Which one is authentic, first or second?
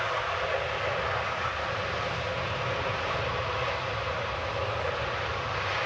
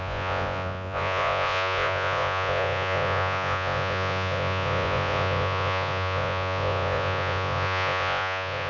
first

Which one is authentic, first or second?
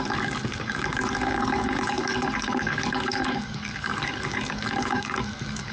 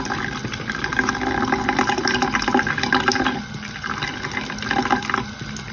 second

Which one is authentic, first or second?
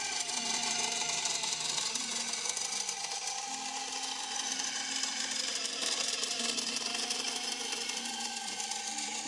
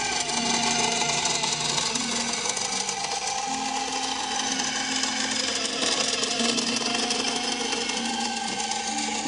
second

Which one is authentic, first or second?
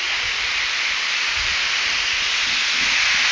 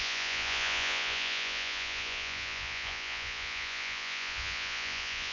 first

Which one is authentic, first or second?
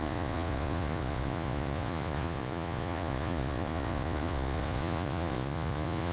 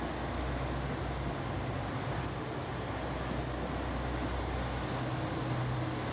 second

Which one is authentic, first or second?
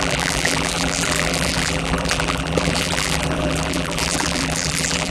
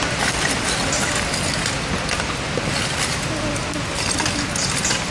second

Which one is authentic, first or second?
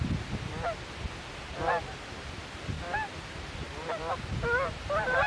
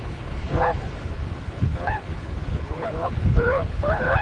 first